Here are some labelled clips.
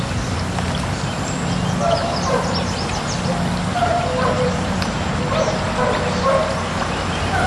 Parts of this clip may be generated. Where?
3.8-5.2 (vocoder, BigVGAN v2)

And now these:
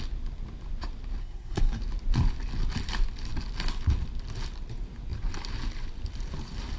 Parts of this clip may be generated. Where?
1.2-1.8 (codec, SNAC)

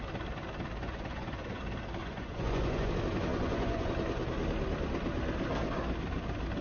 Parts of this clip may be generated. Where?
0.8-1.6 (vocoder, Vocos); 2.0-2.9; 3.3-3.9